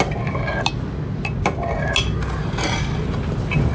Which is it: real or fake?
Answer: real